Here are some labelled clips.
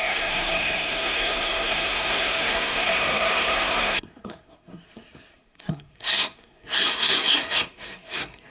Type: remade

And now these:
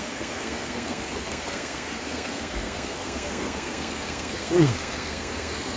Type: remade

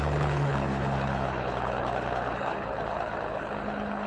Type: remade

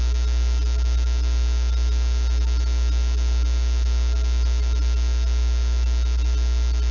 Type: recorded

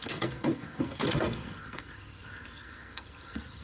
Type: remade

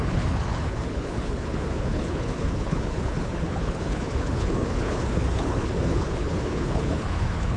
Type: remade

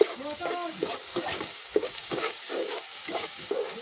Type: remade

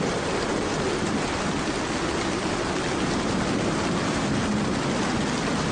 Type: recorded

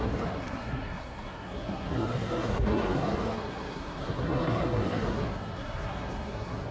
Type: remade